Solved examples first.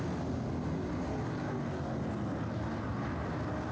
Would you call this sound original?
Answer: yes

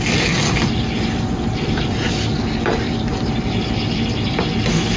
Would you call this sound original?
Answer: yes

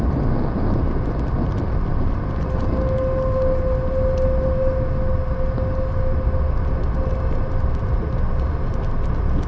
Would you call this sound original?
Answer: yes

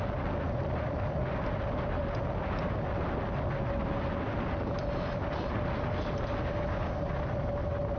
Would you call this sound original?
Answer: yes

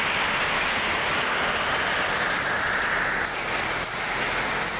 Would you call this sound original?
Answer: yes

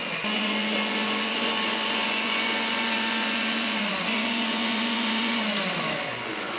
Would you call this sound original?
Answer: no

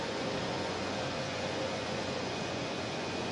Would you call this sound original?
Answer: no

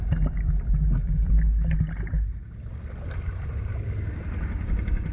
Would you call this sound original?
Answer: yes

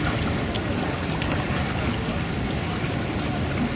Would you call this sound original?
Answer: yes